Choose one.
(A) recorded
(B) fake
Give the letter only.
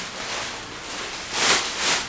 A